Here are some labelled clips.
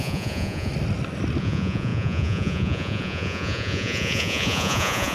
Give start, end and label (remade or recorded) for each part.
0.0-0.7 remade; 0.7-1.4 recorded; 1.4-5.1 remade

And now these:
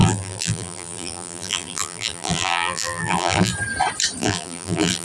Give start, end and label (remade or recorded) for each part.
0.0-3.5 remade; 3.5-4.2 recorded; 4.2-5.0 remade